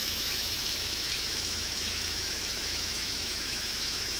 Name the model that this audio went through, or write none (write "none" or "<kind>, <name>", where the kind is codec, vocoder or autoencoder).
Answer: autoencoder, DAC-VAE